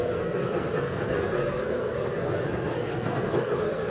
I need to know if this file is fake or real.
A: fake